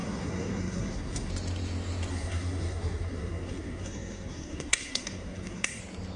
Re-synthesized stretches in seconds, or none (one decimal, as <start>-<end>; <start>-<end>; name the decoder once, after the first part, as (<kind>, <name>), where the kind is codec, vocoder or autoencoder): 0.0-1.3 (codec, SNAC); 2.1-5.8